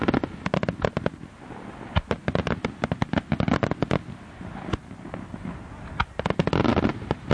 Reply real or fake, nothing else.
real